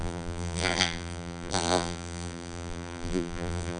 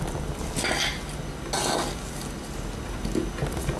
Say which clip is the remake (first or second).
first